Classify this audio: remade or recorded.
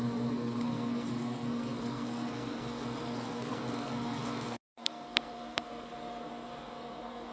remade